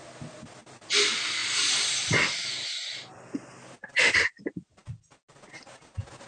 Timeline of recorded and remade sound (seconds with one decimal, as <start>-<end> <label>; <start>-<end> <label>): 0.0-1.4 recorded; 1.4-5.2 remade; 5.2-6.3 recorded

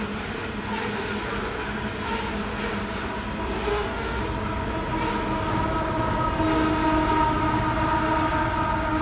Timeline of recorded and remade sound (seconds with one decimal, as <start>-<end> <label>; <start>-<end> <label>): 0.0-3.7 recorded; 3.7-4.2 remade; 4.2-9.0 recorded

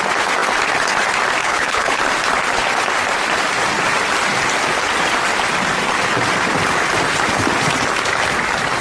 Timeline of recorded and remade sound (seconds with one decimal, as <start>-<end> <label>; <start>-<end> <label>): 0.0-1.4 recorded; 1.4-2.0 remade; 2.0-8.8 recorded

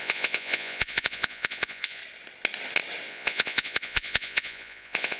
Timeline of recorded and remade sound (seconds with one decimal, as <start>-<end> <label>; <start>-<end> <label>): 0.0-2.0 remade; 2.0-3.1 recorded; 3.1-5.2 remade

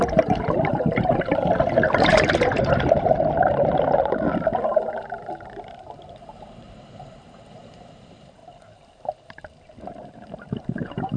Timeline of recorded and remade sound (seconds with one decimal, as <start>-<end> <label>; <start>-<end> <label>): 0.0-4.5 remade; 4.5-5.3 recorded; 5.3-8.4 remade; 8.4-9.3 recorded; 9.3-11.2 remade